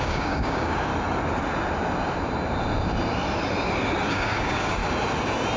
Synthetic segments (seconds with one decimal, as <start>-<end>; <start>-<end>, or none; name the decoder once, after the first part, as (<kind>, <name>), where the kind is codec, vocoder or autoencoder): 0.0-0.9 (codec, DAC); 4.1-4.8